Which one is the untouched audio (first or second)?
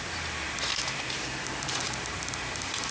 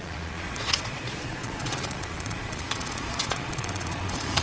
first